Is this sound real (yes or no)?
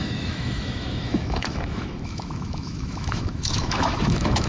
no